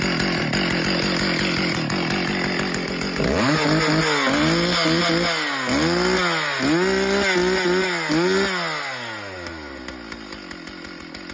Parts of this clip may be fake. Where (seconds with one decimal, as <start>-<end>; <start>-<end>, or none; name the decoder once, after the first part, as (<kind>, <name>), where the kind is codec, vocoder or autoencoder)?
none